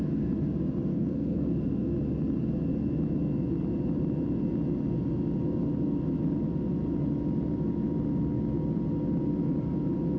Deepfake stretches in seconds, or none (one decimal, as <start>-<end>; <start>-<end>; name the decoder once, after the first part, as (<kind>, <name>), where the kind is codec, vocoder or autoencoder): 0.9-1.5 (codec, SNAC)